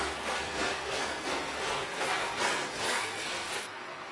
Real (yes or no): no